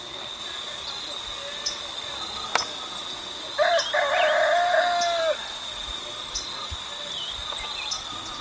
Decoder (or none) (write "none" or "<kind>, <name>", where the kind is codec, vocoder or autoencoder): none